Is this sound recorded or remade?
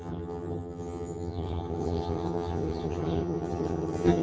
remade